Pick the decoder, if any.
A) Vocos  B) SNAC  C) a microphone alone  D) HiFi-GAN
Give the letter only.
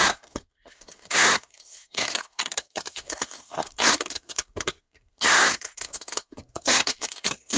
B